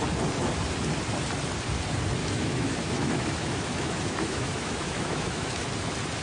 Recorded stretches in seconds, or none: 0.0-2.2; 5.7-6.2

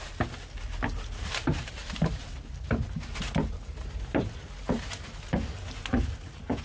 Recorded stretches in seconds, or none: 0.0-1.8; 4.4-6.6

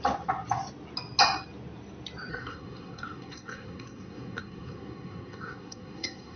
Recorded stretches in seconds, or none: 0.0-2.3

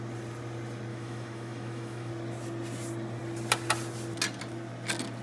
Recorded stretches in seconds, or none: 0.0-0.9; 2.1-5.2

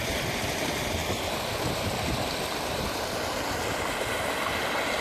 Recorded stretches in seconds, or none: 0.0-5.0

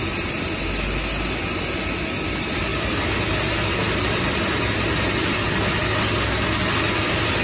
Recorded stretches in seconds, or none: 0.5-7.4

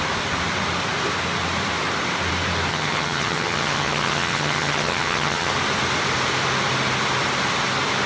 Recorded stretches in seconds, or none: 0.0-2.7; 5.5-8.1